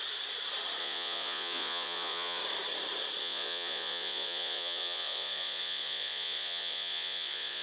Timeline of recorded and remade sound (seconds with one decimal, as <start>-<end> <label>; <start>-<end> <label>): 0.0-0.8 recorded; 0.8-2.4 remade; 2.4-3.2 recorded; 3.2-7.6 remade